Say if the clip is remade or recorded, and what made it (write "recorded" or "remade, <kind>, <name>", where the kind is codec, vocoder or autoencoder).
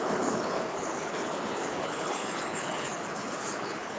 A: remade, codec, HILCodec